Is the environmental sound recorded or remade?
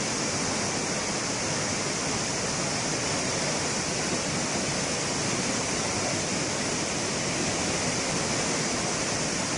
recorded